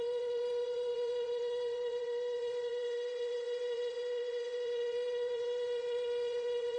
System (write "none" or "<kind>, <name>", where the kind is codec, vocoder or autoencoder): vocoder, WaveNeXt